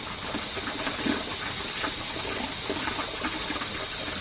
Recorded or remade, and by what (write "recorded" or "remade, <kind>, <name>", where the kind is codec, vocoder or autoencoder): recorded